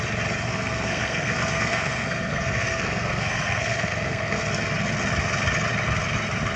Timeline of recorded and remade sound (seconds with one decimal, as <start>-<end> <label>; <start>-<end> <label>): 0.0-0.5 recorded; 0.5-4.5 remade; 4.5-6.6 recorded